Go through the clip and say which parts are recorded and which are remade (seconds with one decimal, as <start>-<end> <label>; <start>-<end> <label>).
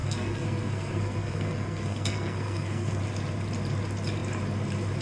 0.0-3.0 remade; 3.0-5.0 recorded